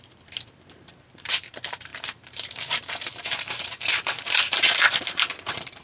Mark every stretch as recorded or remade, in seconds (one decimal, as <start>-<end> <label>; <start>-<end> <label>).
0.0-5.8 remade